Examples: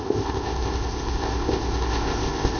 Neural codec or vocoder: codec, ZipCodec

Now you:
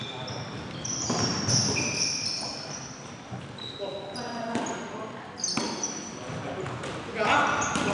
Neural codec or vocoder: none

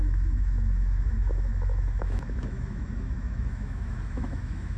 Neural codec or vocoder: autoencoder, DAC-VAE